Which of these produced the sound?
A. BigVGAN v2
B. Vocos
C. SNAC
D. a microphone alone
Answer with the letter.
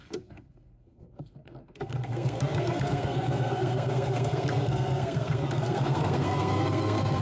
C